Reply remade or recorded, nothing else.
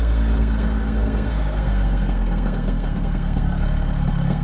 remade